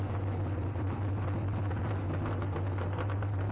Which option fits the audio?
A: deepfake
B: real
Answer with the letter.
B